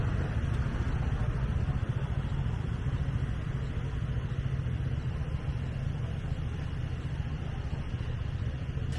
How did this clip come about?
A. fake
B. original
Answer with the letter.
B